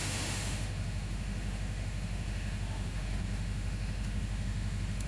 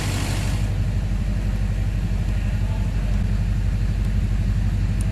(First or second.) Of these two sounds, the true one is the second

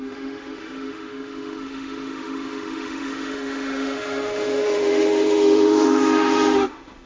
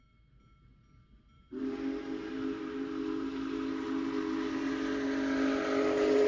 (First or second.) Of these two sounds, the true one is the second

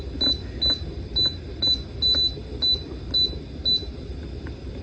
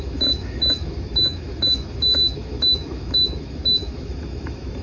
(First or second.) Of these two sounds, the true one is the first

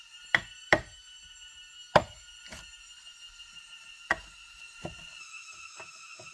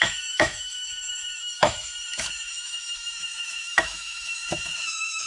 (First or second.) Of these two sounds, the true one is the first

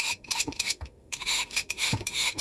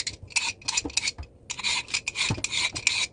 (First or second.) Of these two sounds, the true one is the second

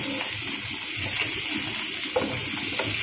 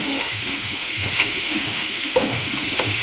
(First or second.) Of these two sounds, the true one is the first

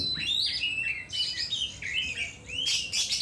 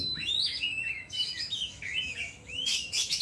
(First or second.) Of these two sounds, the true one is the first